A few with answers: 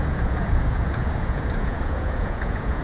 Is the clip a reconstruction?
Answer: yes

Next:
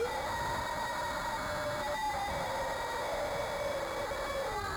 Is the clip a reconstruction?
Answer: yes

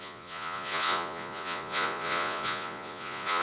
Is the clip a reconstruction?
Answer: yes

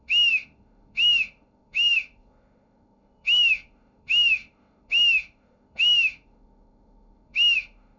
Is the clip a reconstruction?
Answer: yes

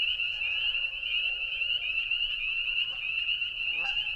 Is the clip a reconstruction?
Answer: yes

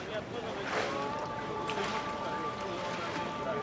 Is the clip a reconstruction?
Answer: no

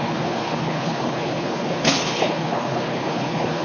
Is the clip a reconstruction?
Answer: yes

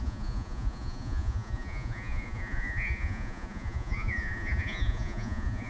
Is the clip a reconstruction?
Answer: yes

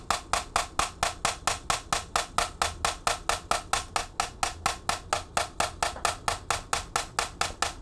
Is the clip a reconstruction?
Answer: no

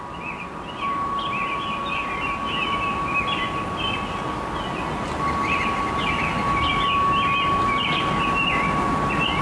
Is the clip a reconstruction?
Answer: no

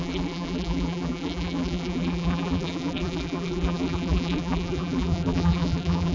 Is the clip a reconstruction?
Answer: yes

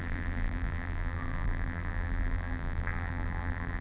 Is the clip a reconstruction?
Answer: yes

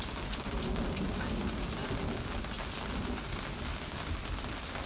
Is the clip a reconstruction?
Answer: no